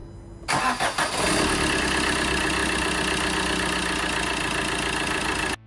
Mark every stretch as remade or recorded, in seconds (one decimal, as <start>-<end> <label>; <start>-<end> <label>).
0.0-5.7 recorded